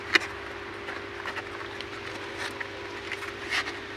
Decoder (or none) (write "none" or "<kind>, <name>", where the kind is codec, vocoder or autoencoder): none